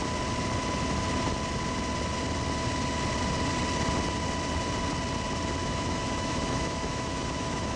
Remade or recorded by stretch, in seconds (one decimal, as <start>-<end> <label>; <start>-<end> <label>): 0.0-5.6 recorded; 5.6-7.8 remade